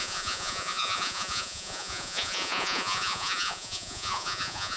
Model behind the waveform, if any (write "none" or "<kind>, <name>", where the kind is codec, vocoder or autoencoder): vocoder, Vocos